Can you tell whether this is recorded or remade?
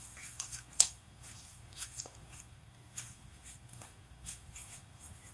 remade